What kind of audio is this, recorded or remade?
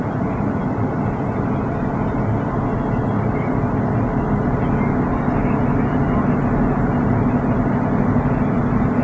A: recorded